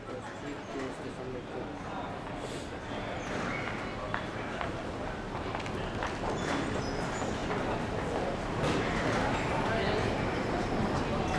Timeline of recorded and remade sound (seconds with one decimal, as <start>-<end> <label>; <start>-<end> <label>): 0.0-11.4 recorded